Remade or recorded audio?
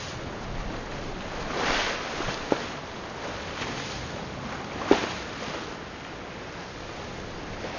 recorded